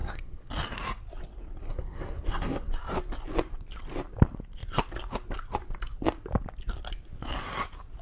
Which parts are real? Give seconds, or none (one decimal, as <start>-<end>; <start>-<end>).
0.5-1.7; 2.7-8.0